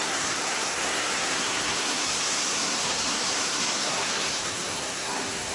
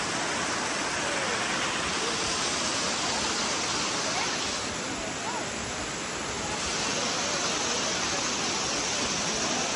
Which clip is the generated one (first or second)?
first